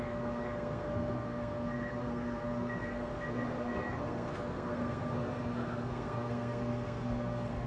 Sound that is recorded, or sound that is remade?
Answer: remade